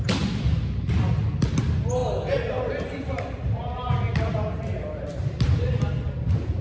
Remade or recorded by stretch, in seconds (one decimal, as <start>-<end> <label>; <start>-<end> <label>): 0.0-6.6 recorded